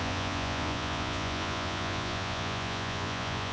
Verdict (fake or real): fake